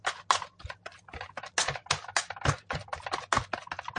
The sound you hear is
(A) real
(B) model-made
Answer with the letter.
A